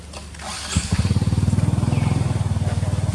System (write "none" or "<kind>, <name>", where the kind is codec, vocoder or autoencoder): none